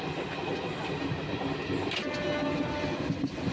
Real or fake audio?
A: real